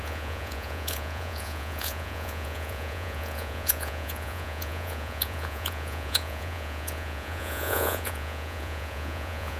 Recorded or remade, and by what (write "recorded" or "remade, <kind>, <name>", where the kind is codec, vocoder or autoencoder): remade, vocoder, Vocos